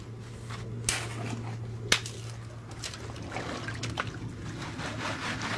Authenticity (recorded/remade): recorded